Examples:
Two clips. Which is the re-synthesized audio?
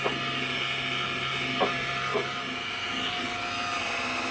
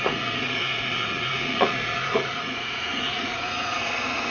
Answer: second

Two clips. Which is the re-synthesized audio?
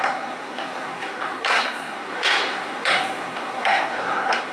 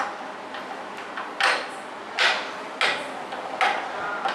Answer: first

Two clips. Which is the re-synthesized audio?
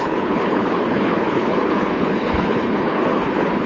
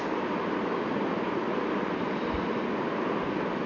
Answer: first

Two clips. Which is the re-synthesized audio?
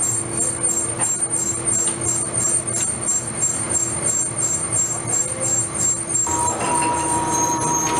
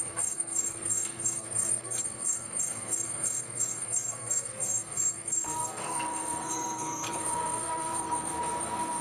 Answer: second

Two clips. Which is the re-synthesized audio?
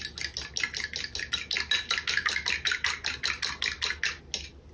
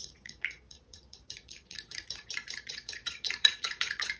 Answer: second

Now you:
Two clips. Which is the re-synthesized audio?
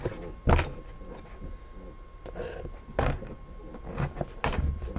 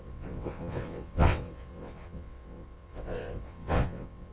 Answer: second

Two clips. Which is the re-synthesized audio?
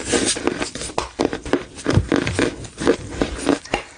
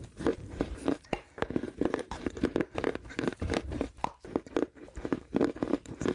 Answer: second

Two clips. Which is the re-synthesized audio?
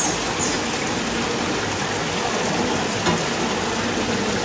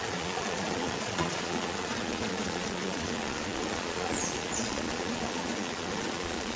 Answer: second